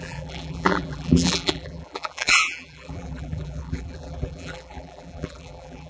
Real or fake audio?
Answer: fake